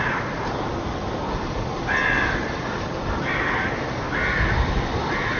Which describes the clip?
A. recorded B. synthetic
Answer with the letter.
A